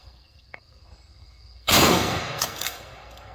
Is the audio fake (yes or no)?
yes